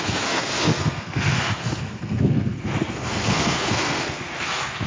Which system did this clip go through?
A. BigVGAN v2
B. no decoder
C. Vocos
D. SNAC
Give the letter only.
D